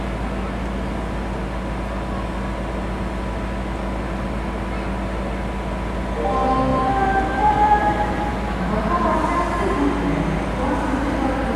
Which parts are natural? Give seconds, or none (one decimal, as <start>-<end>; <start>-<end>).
0.0-6.7; 8.3-11.6